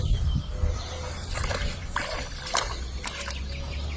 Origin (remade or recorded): remade